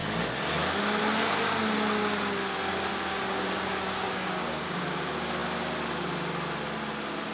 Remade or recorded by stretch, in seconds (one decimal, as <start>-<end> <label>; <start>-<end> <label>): 0.0-2.9 recorded; 2.9-4.8 remade; 4.8-7.3 recorded